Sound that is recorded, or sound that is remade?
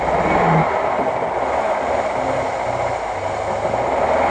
recorded